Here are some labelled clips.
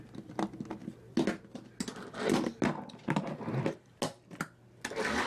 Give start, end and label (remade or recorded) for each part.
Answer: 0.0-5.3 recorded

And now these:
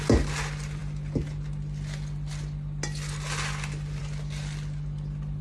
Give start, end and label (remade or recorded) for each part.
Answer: 0.0-5.4 recorded